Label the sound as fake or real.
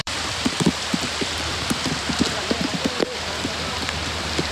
fake